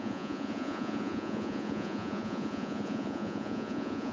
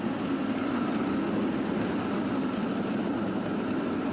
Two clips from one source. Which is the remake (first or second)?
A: first